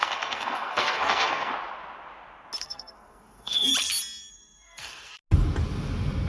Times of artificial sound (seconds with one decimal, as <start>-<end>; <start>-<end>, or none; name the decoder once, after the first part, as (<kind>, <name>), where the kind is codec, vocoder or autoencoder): 0.0-1.5 (codec, SNAC); 2.6-3.7; 4.3-5.2